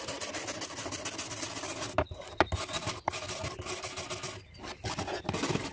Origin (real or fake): real